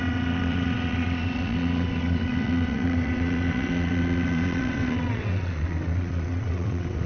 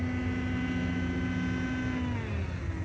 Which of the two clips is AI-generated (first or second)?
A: first